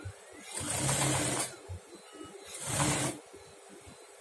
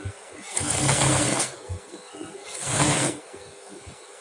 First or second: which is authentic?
first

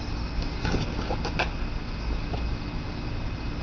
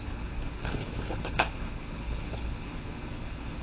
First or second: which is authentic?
first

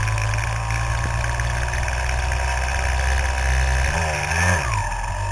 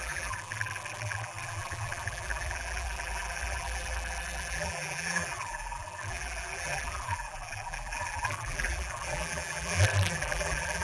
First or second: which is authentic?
first